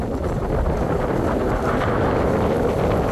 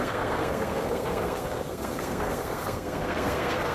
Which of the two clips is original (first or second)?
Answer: first